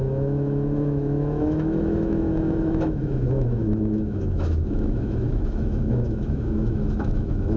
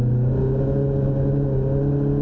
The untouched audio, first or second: second